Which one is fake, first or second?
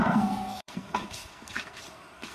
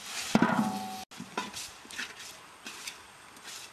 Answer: first